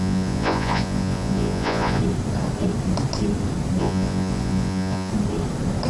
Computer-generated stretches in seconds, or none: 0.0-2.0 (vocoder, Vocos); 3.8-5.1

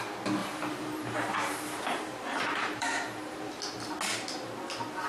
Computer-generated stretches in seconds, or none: 0.4-3.5 (vocoder, BigVGAN v2)

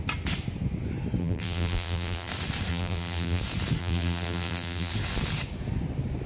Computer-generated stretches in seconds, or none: 1.2-2.3 (vocoder, BigVGAN v2); 2.7-3.4; 3.8-4.9

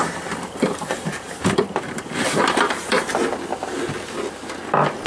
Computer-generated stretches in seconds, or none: 0.0-3.1 (vocoder, BigVGAN v2)

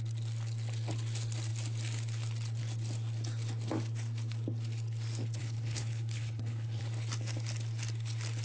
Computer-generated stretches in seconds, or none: 5.4-6.8 (codec, HILCodec)

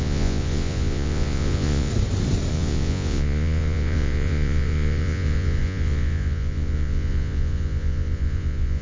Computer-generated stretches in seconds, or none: 0.0-1.9 (vocoder, Vocos); 2.5-8.8

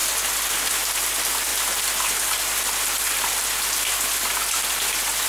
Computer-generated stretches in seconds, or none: none

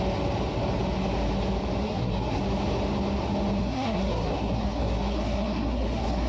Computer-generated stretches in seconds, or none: 1.8-2.4 (codec, SNAC); 3.6-6.3